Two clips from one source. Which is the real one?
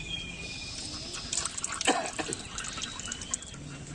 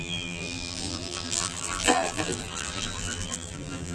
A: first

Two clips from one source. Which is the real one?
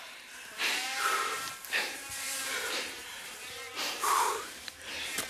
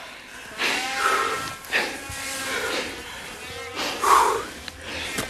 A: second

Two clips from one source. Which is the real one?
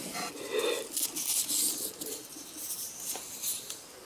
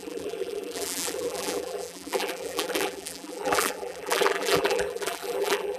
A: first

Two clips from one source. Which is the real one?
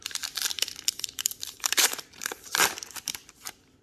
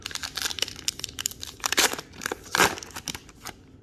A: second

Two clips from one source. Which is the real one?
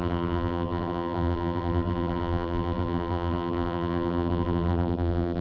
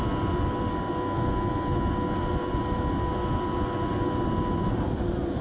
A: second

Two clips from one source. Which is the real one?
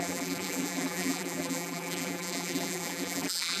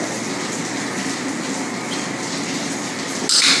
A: second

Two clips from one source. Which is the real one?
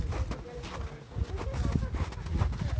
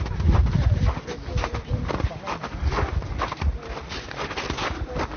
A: first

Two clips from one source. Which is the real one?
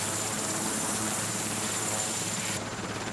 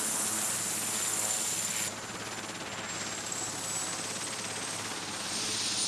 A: second